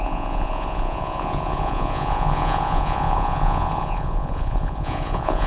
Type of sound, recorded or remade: remade